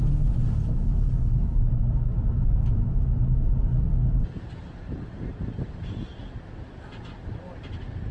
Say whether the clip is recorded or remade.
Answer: recorded